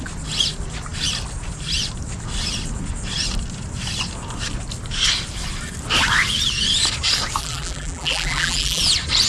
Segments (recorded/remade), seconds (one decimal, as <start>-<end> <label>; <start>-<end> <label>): 0.0-7.4 recorded; 7.4-8.8 remade; 8.8-9.3 recorded